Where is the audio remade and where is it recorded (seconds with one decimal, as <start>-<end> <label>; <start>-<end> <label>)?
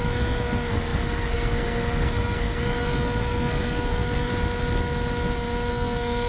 0.0-4.3 remade; 4.3-5.7 recorded; 5.7-6.3 remade